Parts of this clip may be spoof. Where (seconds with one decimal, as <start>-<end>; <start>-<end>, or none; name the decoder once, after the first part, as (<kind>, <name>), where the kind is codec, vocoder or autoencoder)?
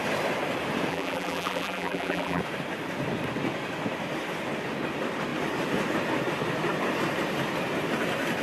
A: 0.9-2.4 (vocoder, BigVGAN v2)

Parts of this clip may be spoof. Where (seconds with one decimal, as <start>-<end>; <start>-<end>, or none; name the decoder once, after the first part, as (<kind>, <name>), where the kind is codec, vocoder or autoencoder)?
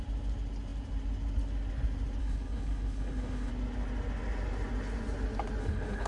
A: 2.2-3.5 (codec, HILCodec); 5.6-6.1